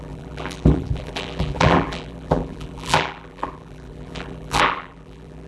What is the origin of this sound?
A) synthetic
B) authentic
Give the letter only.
A